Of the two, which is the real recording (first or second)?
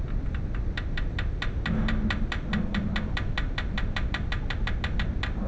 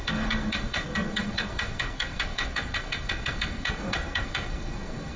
first